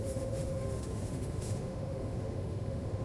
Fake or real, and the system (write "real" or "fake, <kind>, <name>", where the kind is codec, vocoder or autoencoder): fake, autoencoder, DAC-VAE